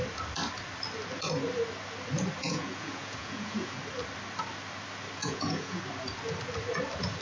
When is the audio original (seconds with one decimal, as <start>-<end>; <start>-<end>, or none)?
0.0-2.4; 3.8-5.2; 5.8-7.2